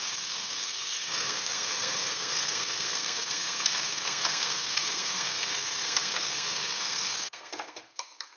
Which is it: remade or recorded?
remade